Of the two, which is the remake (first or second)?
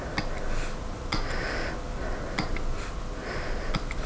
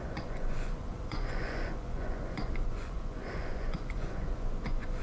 second